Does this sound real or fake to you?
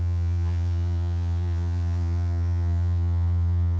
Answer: fake